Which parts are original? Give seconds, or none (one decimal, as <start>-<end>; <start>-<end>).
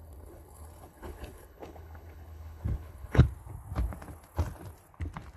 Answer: 3.2-5.4